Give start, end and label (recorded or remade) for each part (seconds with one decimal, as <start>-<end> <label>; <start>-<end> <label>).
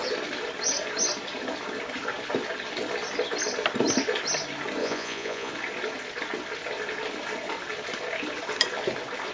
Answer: 0.0-4.8 recorded; 4.8-5.5 remade; 5.5-9.3 recorded